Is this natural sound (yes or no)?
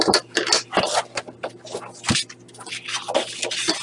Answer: yes